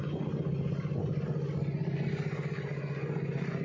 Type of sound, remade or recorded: recorded